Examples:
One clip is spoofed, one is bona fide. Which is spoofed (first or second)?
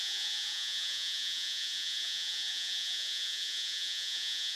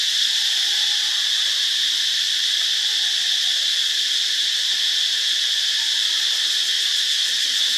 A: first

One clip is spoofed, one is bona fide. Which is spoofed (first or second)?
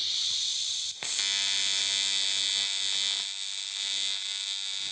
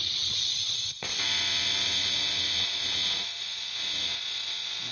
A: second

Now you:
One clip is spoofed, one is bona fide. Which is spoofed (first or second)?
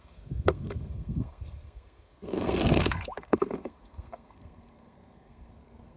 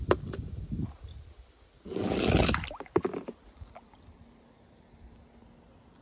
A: first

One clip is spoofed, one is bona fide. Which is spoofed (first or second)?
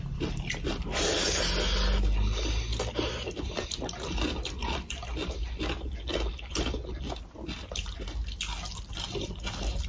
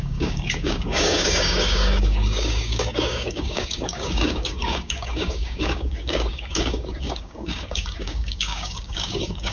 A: second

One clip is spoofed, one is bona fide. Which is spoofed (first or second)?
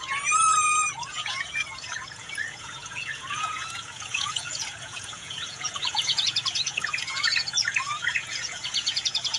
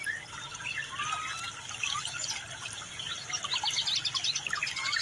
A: first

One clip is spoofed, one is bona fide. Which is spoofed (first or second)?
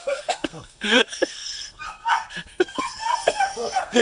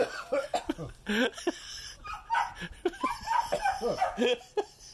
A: first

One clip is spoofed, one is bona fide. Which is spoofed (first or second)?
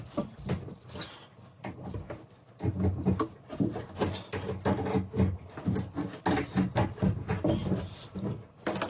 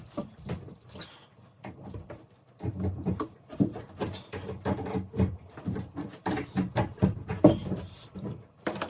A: second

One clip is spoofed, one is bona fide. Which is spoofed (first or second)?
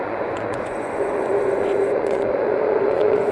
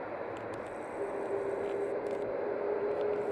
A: first